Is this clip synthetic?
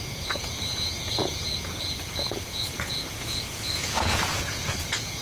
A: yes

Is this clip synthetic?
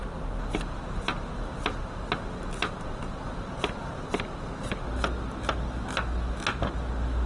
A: no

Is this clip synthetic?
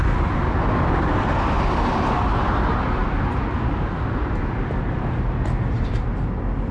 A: no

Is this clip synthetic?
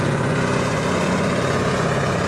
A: yes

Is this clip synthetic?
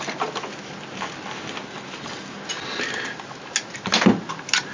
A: no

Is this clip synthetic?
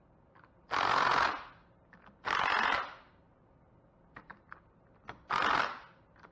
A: no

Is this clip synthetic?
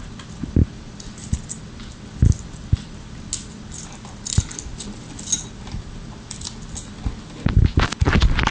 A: no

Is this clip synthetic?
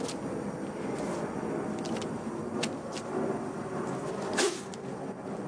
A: no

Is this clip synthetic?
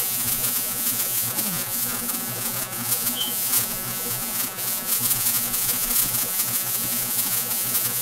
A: yes